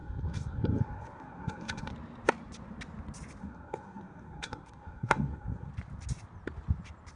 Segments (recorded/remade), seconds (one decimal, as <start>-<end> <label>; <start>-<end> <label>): 0.0-1.9 remade; 1.9-3.4 recorded; 3.4-5.7 remade; 5.7-7.2 recorded